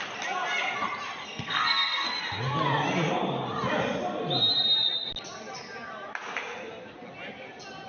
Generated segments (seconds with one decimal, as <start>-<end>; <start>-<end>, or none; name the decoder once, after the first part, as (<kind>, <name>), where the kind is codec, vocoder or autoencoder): 1.2-2.2 (codec, SNAC)